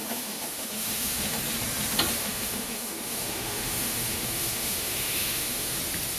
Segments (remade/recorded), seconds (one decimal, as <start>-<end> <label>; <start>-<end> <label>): 0.0-1.4 remade; 1.4-2.2 recorded; 2.2-5.8 remade; 5.8-6.2 recorded